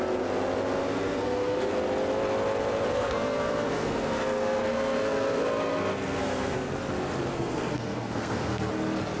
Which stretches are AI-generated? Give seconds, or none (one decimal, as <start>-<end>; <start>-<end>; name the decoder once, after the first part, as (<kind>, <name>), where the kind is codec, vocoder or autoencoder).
0.8-1.7 (codec, SNAC); 2.9-6.7; 7.3-8.7

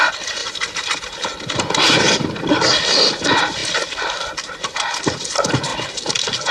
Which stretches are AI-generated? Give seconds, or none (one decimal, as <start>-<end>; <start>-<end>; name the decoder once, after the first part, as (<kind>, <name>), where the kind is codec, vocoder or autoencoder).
0.4-2.1 (vocoder, BigVGAN v2)

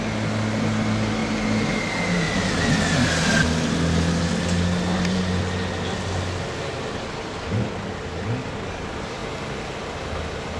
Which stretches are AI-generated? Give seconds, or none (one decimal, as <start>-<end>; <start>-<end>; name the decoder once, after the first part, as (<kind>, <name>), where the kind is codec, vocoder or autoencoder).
4.9-5.4 (vocoder, BigVGAN v2)

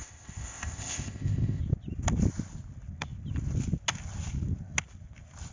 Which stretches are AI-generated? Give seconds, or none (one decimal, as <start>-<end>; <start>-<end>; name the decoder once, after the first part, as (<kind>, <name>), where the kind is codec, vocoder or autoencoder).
0.0-1.6 (codec, ZipCodec)

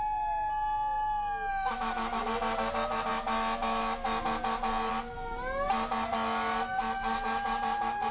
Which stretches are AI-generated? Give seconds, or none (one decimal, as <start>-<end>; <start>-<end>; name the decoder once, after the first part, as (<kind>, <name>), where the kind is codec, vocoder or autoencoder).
1.5-2.2 (autoencoder, DAC-VAE)

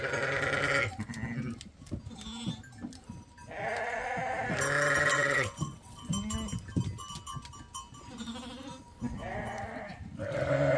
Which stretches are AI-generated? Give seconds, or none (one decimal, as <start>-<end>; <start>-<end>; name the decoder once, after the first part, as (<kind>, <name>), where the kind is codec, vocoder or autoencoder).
5.1-6.0 (vocoder, WaveNeXt)